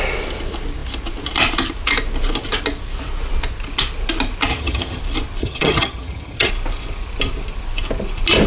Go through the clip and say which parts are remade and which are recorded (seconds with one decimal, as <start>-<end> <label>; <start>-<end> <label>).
0.0-4.5 recorded; 4.5-5.0 remade; 5.0-5.4 recorded; 5.4-6.5 remade; 6.5-8.5 recorded